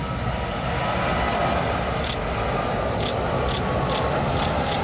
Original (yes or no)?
yes